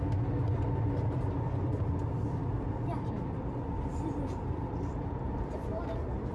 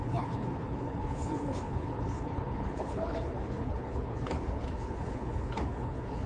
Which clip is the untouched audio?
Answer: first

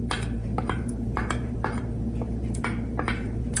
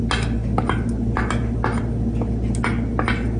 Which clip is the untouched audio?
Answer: second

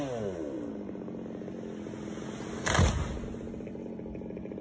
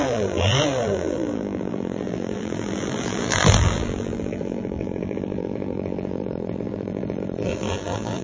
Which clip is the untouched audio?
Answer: first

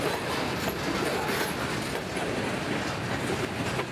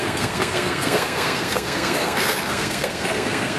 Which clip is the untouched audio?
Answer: first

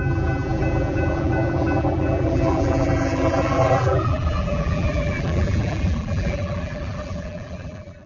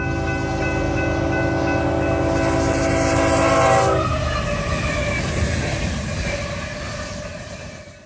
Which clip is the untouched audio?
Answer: second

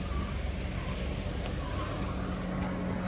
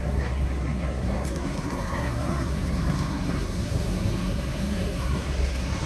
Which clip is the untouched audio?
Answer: first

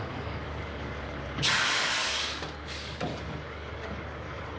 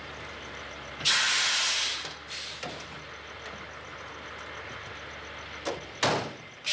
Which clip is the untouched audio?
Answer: second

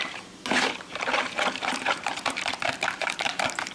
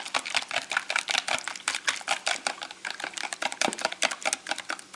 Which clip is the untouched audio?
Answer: second